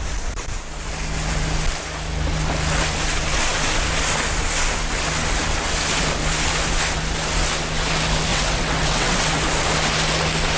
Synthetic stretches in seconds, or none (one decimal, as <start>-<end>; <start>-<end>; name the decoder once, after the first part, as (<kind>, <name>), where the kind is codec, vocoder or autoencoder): 8.3-9.3 (vocoder, WaveNeXt)